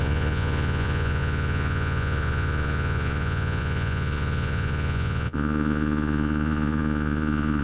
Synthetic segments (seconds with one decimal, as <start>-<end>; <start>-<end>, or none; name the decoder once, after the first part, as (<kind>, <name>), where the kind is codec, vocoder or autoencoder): 0.0-7.6 (vocoder, Vocos)